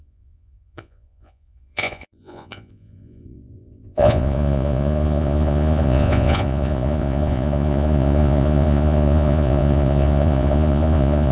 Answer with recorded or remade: remade